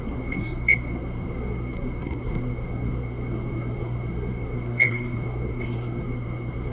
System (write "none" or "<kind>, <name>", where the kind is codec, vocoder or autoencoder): codec, SNAC